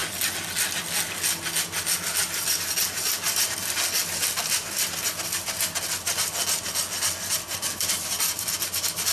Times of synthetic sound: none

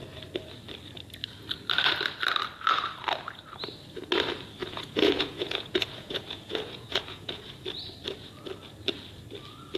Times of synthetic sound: 4.6-7.5 (vocoder, Vocos)

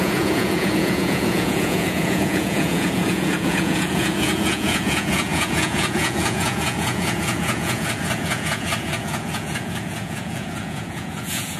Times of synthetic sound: 0.0-11.6 (vocoder, Vocos)

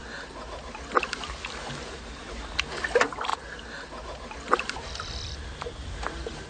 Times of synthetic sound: none

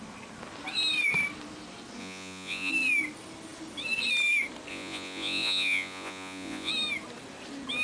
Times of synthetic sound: 2.0-2.7 (vocoder, Vocos); 4.7-6.7